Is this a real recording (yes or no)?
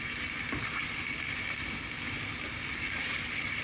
yes